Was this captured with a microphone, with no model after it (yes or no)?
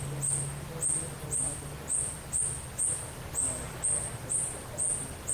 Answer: yes